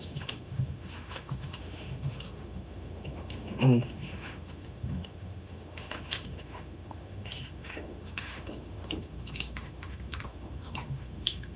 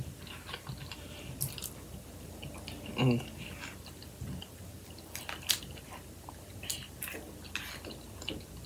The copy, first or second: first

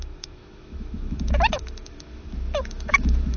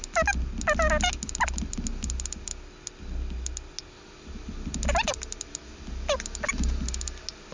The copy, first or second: first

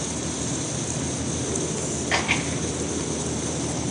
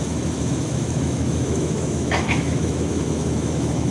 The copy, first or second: second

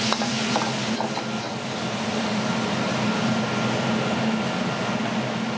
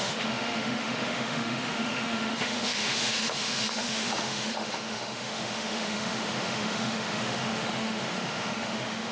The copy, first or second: second